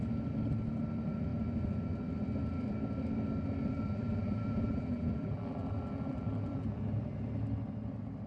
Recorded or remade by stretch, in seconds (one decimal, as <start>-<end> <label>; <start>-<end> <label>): 0.0-3.7 recorded; 3.7-7.0 remade; 7.0-8.3 recorded

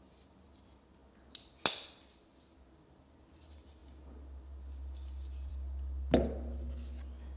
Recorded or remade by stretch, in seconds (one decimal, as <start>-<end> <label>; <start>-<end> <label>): 0.0-7.4 recorded

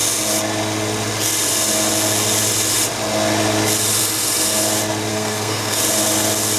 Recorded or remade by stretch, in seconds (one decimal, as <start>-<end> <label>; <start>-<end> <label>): 0.0-5.1 recorded; 5.1-5.8 remade; 5.8-6.6 recorded

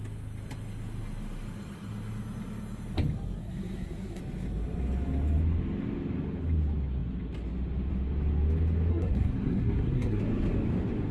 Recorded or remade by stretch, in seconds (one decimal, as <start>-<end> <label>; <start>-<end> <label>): 0.0-3.4 recorded; 3.4-4.2 remade; 4.2-8.9 recorded; 8.9-10.2 remade; 10.2-11.1 recorded

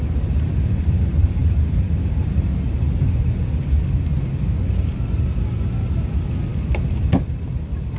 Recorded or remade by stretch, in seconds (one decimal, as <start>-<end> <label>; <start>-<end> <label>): 0.0-8.0 recorded

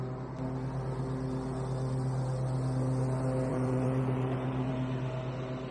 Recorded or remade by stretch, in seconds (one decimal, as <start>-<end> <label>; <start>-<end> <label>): 0.0-3.5 recorded; 3.5-4.7 remade; 4.7-5.7 recorded

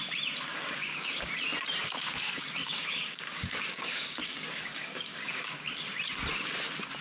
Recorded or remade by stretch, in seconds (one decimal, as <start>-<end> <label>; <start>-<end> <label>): 0.0-0.5 recorded; 0.5-1.3 remade; 1.3-1.8 recorded; 1.8-5.9 remade; 5.9-7.0 recorded

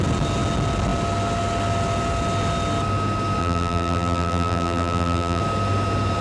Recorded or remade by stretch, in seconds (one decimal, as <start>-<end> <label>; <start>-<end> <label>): 0.0-3.4 recorded; 3.4-5.4 remade; 5.4-6.2 recorded